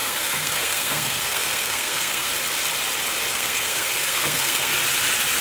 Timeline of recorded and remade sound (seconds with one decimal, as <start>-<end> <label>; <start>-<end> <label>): 0.0-2.3 remade; 2.3-3.3 recorded; 3.3-4.7 remade; 4.7-5.4 recorded